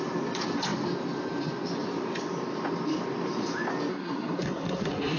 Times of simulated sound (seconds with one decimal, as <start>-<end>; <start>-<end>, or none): 3.9-5.2